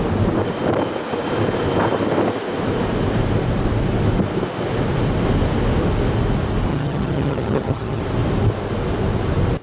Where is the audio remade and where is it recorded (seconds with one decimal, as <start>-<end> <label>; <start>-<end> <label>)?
0.0-6.7 recorded; 6.7-8.0 remade; 8.0-9.6 recorded